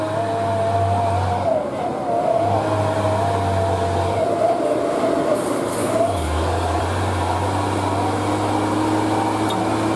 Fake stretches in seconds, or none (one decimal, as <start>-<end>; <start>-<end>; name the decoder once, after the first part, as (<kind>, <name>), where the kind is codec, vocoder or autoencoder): 5.8-6.8 (codec, DAC)